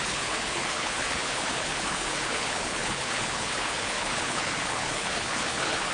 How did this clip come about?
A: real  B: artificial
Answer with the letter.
B